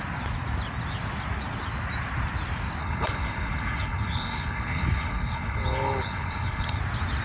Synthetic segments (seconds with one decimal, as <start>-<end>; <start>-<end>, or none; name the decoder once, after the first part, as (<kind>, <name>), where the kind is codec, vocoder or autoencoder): 2.8-6.8 (codec, HILCodec)